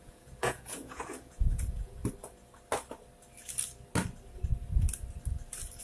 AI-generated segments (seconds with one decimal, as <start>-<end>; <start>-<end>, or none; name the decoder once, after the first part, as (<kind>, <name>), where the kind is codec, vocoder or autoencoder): 0.0-2.0 (vocoder, Vocos)